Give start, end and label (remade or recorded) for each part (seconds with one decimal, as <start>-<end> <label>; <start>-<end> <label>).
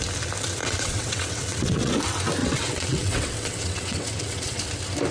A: 0.0-0.6 recorded; 0.6-1.9 remade; 1.9-2.4 recorded; 2.4-4.6 remade; 4.6-5.1 recorded